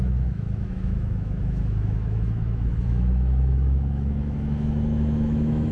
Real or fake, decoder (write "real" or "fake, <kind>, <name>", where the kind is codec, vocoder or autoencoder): fake, autoencoder, DAC-VAE